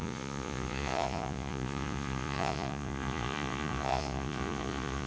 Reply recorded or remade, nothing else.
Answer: remade